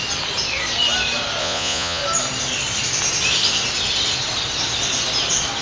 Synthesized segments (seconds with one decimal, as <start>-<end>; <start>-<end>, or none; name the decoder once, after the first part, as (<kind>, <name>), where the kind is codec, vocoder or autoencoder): 1.4-2.0 (vocoder, Vocos)